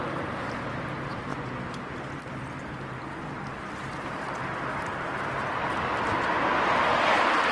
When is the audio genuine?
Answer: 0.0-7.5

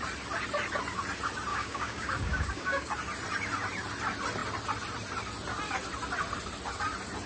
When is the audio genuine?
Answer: 0.0-1.5; 2.9-7.3

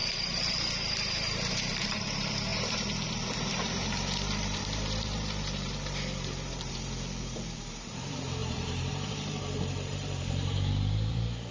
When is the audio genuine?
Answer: 0.0-1.5

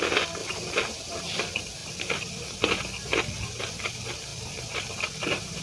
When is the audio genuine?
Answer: 0.0-0.4; 1.4-5.6

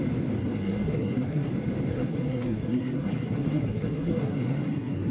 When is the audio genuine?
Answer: 0.0-0.4; 1.5-1.9

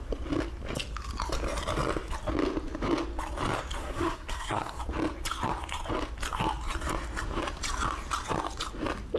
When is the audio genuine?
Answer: 0.0-3.8; 4.8-9.2

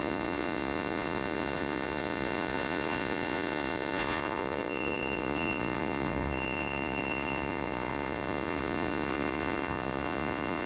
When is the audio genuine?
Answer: none